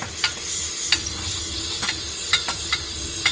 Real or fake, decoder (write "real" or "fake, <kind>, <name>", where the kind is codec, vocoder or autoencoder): real